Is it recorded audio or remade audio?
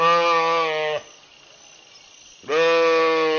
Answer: recorded